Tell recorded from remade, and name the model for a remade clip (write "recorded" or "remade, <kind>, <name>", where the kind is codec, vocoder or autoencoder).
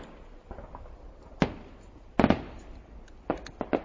recorded